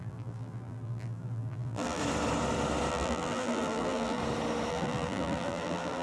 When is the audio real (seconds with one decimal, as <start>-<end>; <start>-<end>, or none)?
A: 2.0-2.9; 4.2-4.7